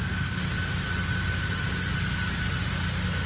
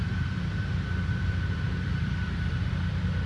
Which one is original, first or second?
first